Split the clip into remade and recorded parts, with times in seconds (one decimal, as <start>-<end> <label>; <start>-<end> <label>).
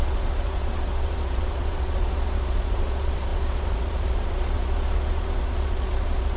0.0-6.4 remade